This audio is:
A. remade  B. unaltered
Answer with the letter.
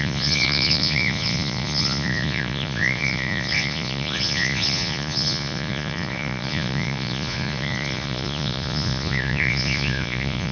A